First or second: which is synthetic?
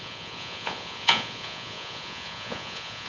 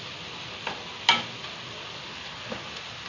first